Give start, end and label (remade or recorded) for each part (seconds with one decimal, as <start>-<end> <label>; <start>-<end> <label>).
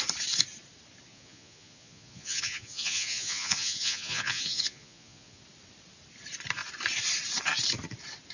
0.0-1.1 recorded; 1.1-5.4 remade; 5.4-8.3 recorded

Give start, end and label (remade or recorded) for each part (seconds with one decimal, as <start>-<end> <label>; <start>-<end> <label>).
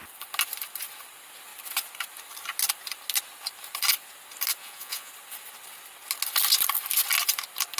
0.0-4.6 recorded; 4.6-5.1 remade; 5.1-7.8 recorded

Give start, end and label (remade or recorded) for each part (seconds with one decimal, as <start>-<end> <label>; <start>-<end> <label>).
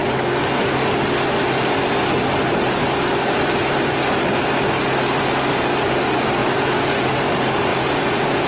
0.0-6.4 recorded; 6.4-7.1 remade; 7.1-7.7 recorded; 7.7-8.5 remade